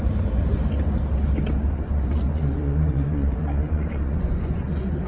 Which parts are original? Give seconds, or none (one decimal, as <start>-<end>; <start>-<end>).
0.0-1.6